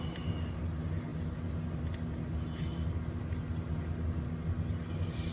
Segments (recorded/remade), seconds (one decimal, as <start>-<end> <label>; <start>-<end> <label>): 0.0-5.3 recorded